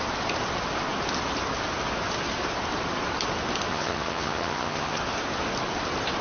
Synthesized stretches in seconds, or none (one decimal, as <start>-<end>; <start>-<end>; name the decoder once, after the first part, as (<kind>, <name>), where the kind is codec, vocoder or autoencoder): 3.7-5.0 (vocoder, HiFi-GAN)

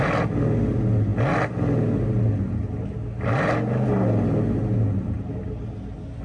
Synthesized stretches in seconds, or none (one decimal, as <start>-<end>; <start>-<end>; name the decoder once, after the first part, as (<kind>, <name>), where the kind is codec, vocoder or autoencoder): none